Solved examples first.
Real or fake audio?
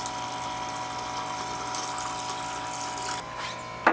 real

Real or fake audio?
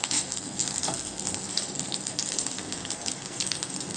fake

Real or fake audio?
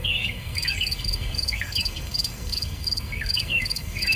fake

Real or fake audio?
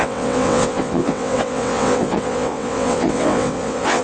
fake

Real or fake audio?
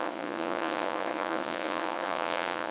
fake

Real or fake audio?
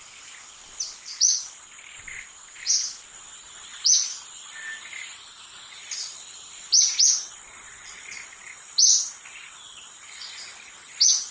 real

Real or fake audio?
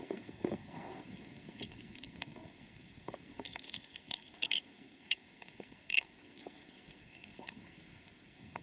fake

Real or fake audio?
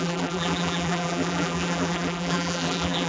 fake